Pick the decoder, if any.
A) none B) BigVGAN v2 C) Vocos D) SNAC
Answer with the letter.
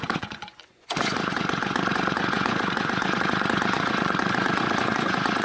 C